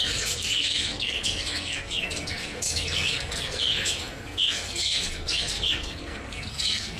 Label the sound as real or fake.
fake